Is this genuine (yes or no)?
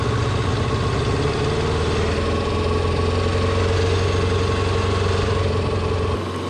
yes